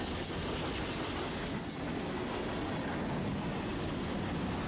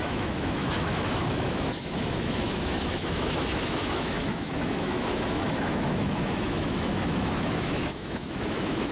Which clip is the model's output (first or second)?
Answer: second